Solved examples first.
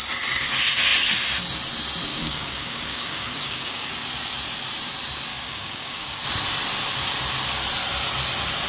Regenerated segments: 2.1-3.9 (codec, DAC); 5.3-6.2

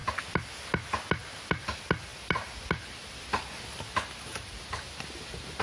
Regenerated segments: none

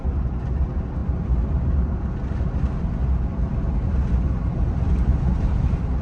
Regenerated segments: none

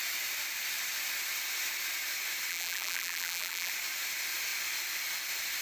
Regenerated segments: 2.5-3.7 (vocoder, BigVGAN v2)

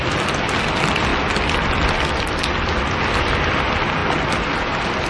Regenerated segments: none

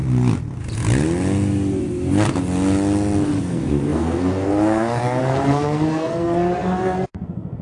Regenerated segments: 3.4-7.6 (codec, SNAC)

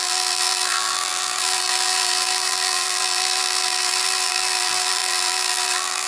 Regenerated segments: 0.0-6.1 (vocoder, BigVGAN v2)